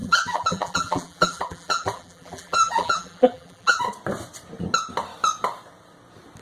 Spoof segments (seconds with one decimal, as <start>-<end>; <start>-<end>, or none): 0.0-3.8

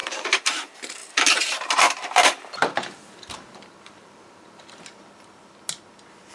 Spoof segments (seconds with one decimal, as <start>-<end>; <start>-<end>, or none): 0.0-0.5; 1.0-4.7